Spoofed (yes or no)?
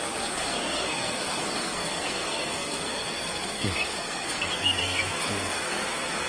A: yes